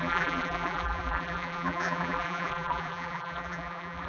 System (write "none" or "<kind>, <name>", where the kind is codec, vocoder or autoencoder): vocoder, BigVGAN v2